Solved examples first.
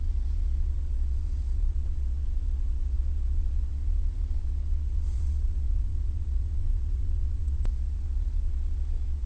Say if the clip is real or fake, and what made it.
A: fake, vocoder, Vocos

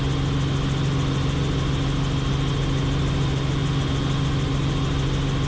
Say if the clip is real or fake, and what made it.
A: real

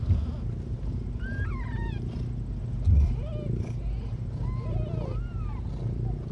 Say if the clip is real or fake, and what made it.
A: real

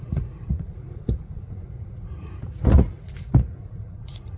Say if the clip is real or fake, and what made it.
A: fake, vocoder, Vocos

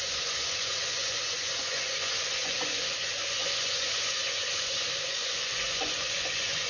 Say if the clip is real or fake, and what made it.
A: fake, vocoder, Vocos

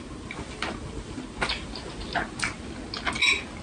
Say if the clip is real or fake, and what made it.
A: real